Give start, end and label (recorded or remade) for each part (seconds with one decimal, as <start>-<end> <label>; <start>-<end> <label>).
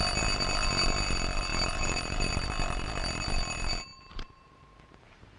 0.0-1.5 recorded; 1.5-2.3 remade; 2.3-3.9 recorded; 3.9-5.4 remade